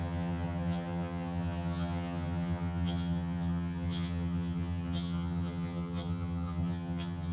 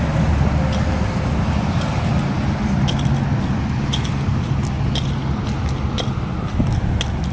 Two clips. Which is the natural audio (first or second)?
second